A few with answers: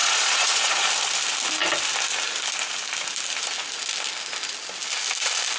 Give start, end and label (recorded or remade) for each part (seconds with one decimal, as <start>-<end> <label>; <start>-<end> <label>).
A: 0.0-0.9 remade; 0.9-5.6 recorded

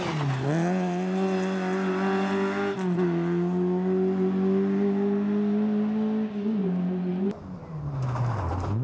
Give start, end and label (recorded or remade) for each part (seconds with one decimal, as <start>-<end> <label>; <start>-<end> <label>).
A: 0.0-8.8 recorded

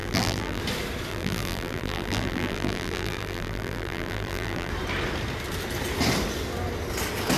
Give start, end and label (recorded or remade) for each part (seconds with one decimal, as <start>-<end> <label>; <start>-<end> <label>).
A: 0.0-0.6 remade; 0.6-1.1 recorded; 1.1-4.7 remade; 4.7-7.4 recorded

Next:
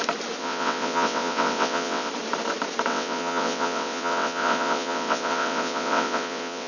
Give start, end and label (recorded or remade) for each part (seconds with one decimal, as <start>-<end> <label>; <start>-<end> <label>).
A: 0.0-0.4 recorded; 0.4-2.1 remade; 2.1-2.9 recorded; 2.9-6.7 remade

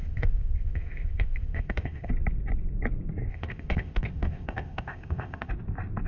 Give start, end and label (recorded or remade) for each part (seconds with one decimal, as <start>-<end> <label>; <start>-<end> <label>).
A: 0.0-2.1 remade; 2.1-3.3 recorded; 3.3-5.5 remade; 5.5-6.1 recorded

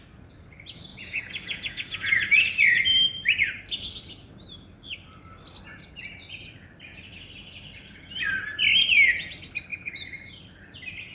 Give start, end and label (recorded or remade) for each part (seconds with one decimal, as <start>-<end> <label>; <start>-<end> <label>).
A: 0.0-0.9 recorded; 0.9-2.4 remade; 2.4-9.7 recorded; 9.7-10.4 remade; 10.4-11.1 recorded

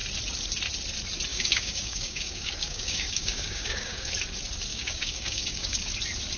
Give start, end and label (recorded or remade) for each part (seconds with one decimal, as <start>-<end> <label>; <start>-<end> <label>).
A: 0.0-1.3 recorded; 1.3-4.1 remade; 4.1-4.7 recorded; 4.7-5.9 remade; 5.9-6.4 recorded

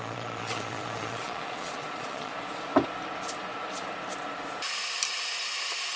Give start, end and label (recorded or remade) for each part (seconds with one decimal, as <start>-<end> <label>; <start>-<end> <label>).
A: 0.0-2.3 remade; 2.3-6.0 recorded